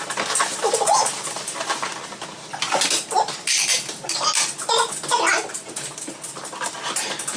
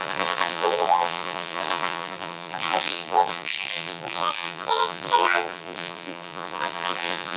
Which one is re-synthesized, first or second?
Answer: second